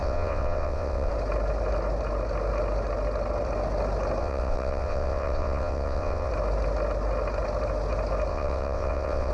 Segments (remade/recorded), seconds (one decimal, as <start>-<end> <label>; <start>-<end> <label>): 0.0-1.1 remade; 1.1-4.2 recorded; 4.2-6.3 remade; 6.3-8.3 recorded; 8.3-9.3 remade